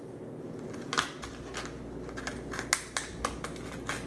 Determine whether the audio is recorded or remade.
recorded